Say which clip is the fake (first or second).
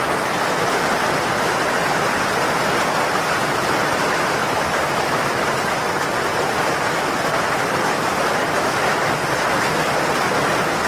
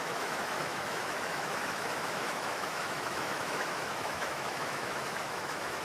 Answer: second